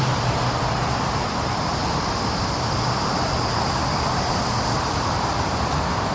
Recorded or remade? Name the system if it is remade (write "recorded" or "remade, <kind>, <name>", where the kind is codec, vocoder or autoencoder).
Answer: remade, vocoder, BigVGAN v2